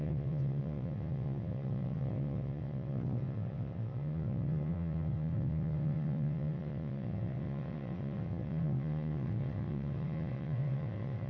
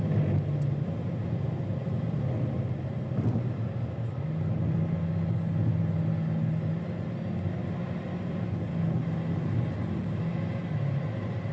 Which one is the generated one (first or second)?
first